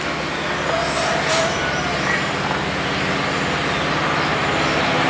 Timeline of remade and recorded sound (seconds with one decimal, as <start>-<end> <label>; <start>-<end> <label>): 0.0-5.1 recorded